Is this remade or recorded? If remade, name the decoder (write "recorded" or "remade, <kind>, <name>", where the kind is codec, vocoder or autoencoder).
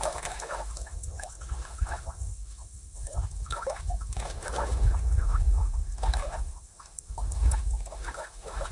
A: remade, autoencoder, DAC-VAE